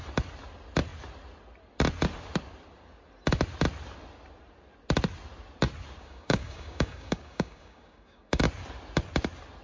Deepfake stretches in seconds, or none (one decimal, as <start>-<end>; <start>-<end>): 6.0-8.4